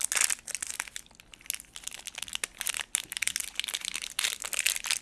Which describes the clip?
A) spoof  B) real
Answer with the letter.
B